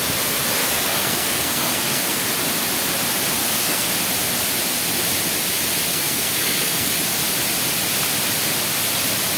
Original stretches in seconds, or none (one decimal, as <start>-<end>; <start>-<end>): 0.0-0.6; 2.3-3.4; 3.9-5.9; 6.9-9.4